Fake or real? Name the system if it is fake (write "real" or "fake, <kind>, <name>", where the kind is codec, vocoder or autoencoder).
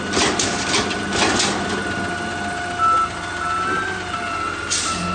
real